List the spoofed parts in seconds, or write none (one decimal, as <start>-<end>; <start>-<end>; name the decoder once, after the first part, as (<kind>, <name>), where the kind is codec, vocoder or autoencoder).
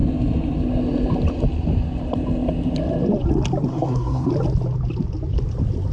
3.7-4.3 (codec, SNAC)